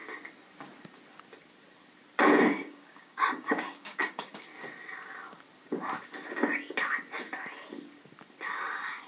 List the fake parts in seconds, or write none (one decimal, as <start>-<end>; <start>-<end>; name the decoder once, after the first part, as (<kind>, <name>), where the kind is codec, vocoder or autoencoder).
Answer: 2.4-4.5 (codec, DAC)

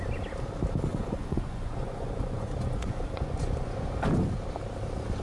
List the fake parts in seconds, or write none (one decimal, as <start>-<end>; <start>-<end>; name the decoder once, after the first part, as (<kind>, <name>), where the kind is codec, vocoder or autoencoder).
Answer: 0.9-4.0 (vocoder, Vocos)

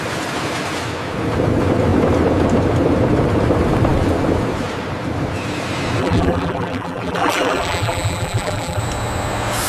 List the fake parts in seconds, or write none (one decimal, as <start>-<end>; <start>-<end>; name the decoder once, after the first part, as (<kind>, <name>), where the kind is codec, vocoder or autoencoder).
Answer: 6.0-8.8 (vocoder, BigVGAN v2)

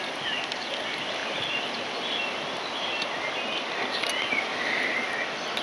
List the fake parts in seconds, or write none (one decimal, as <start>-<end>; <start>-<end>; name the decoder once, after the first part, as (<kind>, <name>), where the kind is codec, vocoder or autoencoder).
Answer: none

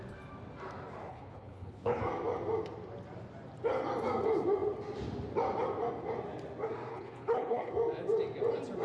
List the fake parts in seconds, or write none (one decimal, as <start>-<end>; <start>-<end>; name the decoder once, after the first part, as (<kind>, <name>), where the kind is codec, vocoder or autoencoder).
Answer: 1.1-2.0 (codec, HILCodec); 6.9-7.7

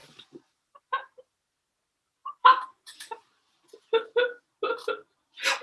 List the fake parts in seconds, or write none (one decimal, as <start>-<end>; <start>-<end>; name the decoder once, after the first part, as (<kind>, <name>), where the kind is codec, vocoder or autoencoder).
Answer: 0.0-1.2 (vocoder, BigVGAN v2); 2.2-3.3